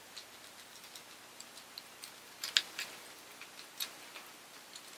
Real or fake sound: real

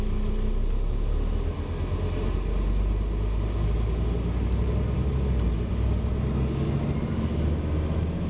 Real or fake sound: real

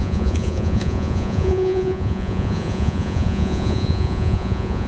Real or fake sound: fake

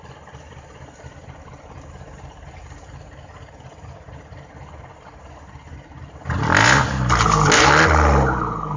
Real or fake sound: real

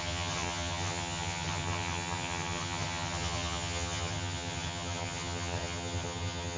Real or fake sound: fake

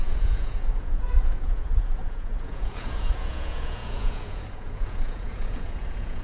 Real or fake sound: fake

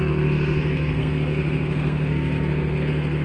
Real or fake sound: fake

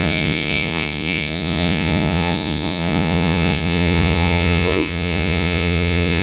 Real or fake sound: fake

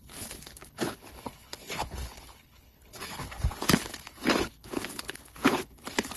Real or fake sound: fake